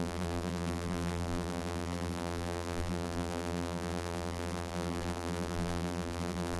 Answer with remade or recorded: remade